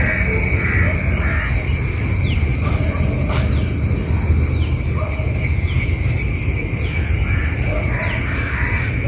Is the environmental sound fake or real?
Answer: real